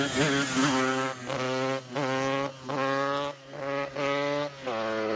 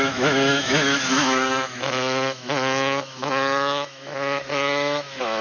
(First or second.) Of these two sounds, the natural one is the first